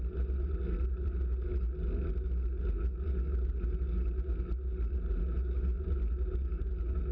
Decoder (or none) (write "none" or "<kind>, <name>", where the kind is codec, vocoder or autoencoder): none